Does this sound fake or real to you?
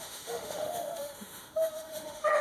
fake